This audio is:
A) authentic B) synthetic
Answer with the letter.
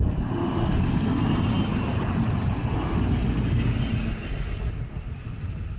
A